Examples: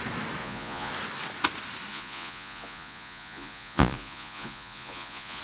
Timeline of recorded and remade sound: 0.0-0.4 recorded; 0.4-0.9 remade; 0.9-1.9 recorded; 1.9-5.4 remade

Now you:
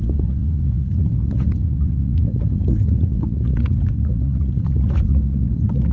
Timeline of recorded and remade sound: 0.0-5.9 remade

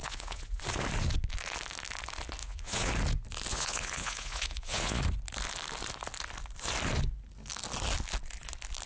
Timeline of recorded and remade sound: 0.0-0.6 remade; 0.6-2.4 recorded; 2.4-2.9 remade; 2.9-3.5 recorded; 3.5-5.0 remade; 5.0-8.9 recorded

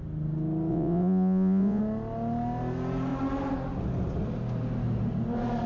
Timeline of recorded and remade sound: 0.0-0.7 recorded; 0.7-1.8 remade; 1.8-5.7 recorded

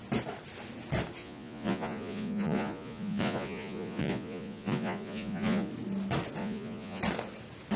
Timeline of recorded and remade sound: 0.0-1.2 recorded; 1.2-5.7 remade; 5.7-6.4 recorded; 6.4-7.0 remade; 7.0-7.8 recorded

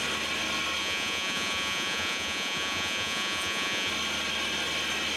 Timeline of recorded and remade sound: 0.0-0.8 recorded; 0.8-3.9 remade; 3.9-5.2 recorded